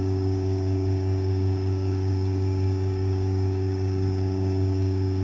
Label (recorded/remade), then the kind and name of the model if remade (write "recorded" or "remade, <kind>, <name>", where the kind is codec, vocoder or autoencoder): remade, codec, DAC